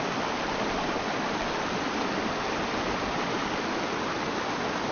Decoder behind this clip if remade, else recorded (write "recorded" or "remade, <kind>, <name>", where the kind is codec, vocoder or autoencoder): recorded